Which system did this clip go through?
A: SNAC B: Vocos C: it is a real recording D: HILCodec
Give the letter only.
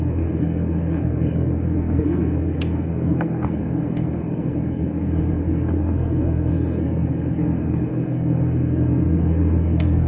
A